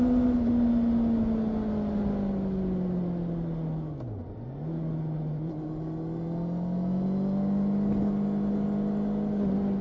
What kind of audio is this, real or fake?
real